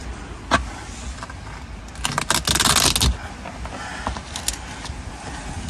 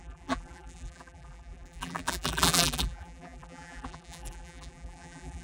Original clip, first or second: first